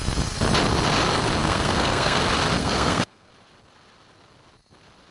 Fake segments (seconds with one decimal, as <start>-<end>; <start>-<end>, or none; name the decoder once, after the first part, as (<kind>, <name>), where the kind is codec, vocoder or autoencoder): 1.4-2.2 (codec, SNAC); 2.6-3.3